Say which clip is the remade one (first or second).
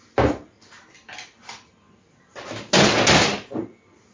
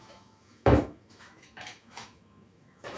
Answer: second